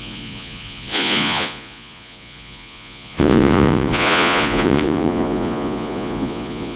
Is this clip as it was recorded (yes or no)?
no